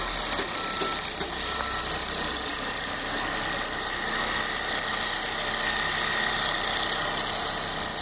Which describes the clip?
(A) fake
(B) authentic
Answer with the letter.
B